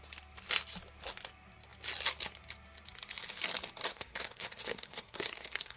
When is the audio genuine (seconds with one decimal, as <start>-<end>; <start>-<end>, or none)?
0.0-3.9

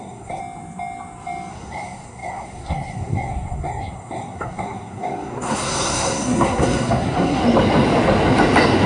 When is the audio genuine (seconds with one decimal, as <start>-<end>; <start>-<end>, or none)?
0.4-1.5; 7.4-8.9

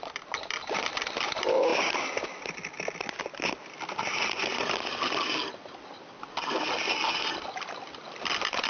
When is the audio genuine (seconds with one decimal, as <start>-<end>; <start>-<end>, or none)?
0.0-8.7

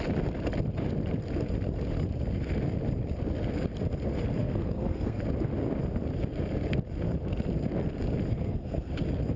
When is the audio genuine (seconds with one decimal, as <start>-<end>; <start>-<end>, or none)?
0.0-4.4; 5.2-8.3; 8.9-9.4

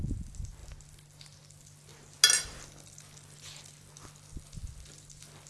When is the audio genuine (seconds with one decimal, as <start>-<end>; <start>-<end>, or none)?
0.0-5.5

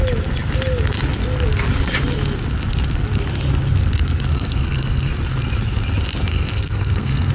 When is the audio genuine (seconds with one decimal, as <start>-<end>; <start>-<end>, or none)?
0.0-4.3; 5.1-6.3

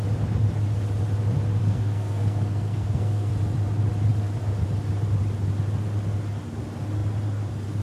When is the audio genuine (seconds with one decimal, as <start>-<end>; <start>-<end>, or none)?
0.0-1.6; 3.3-7.8